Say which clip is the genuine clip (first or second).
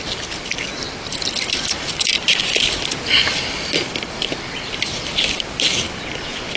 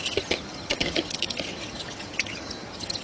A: first